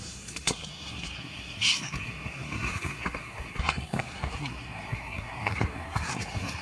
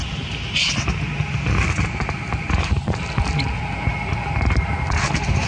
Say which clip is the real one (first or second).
second